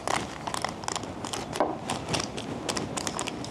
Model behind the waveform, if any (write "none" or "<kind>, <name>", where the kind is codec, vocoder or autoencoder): none